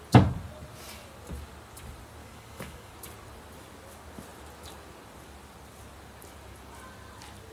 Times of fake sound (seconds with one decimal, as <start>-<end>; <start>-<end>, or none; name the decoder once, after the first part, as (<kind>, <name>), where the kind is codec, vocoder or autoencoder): 2.2-2.9 (codec, DAC)